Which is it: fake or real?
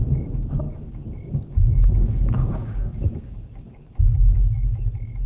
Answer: fake